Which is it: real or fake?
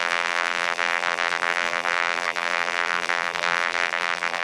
fake